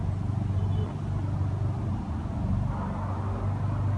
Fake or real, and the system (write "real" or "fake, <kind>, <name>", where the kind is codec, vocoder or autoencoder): real